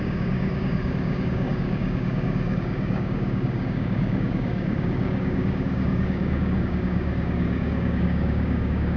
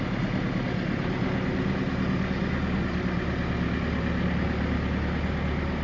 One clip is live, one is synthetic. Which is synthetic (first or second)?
first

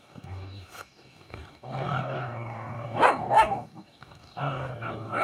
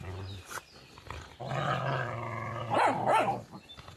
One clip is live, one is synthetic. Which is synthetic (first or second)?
first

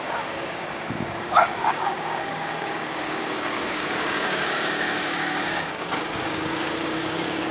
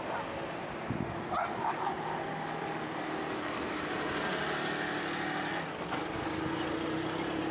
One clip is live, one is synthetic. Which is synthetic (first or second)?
first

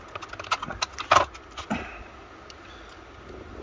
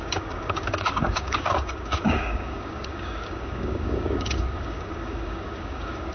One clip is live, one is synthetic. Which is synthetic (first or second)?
second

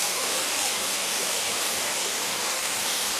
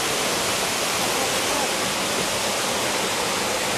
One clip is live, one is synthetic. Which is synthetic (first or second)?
first